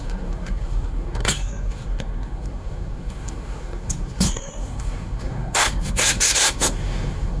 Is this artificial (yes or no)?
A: yes